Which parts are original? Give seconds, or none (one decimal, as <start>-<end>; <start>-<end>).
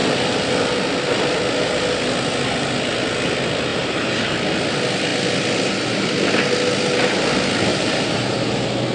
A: 0.0-3.7; 4.2-7.7; 8.5-8.9